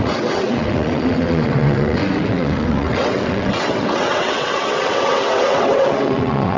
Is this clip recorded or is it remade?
remade